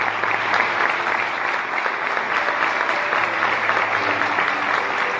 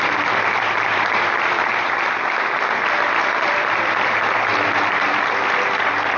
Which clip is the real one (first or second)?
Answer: first